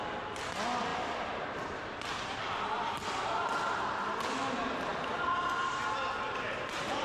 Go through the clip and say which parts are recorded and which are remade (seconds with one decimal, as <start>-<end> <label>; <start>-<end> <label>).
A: 0.0-7.0 recorded